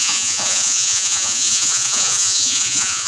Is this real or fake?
fake